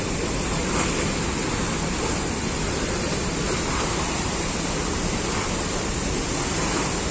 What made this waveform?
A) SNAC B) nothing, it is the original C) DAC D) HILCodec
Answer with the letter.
B